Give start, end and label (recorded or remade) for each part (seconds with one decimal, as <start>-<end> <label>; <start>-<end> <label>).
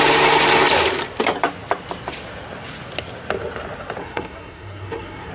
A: 0.0-4.0 recorded; 4.0-5.3 remade